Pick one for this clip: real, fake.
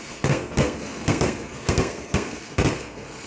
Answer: fake